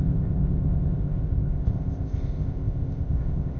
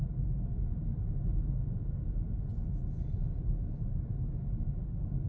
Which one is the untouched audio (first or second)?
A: second